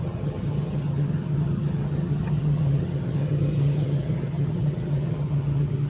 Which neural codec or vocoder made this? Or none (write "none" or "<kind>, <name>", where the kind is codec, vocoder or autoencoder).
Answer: vocoder, HiFi-GAN